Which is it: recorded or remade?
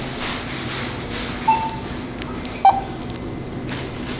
recorded